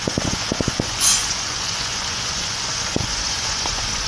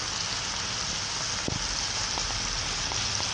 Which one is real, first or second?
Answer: second